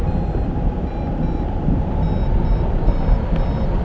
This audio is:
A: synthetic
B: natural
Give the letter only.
B